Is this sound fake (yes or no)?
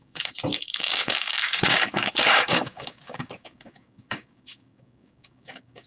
yes